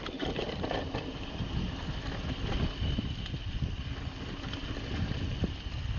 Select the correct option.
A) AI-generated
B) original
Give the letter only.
B